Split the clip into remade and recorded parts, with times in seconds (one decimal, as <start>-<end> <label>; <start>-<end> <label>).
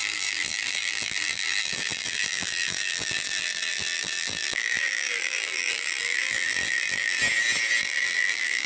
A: 0.0-7.2 remade; 7.2-7.8 recorded; 7.8-8.7 remade